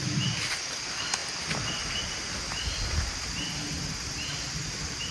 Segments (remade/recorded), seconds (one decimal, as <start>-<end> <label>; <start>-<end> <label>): 0.0-5.1 recorded